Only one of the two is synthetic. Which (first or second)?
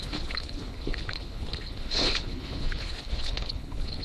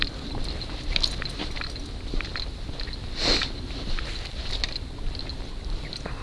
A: first